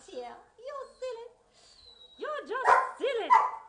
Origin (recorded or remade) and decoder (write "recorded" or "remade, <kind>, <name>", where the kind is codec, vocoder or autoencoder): recorded